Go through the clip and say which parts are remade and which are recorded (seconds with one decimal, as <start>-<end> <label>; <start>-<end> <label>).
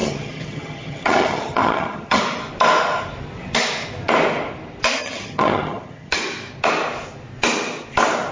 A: 0.0-2.2 remade; 2.2-5.0 recorded; 5.0-6.2 remade; 6.2-8.3 recorded